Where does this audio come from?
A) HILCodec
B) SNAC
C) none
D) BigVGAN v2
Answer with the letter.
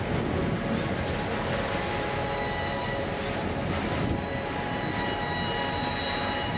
C